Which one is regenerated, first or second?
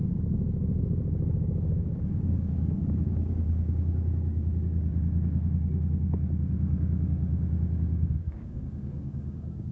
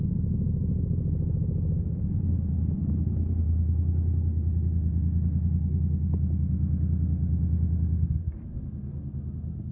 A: first